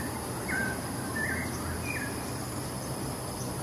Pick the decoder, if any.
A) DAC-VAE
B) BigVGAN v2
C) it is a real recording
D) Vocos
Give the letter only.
C